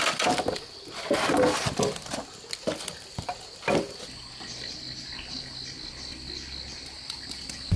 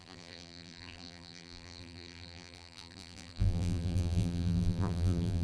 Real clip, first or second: first